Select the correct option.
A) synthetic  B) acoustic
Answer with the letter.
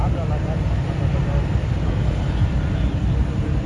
B